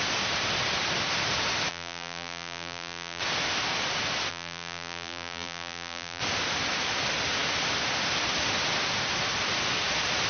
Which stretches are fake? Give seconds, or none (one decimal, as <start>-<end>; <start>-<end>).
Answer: 1.7-3.2; 4.3-6.2